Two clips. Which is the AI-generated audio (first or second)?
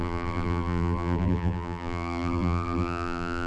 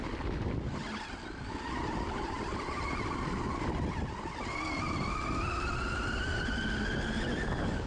first